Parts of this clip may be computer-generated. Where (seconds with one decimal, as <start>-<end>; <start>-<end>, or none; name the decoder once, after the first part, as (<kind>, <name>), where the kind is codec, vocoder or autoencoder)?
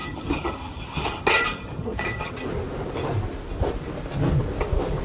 0.0-1.2 (vocoder, HiFi-GAN); 1.6-2.3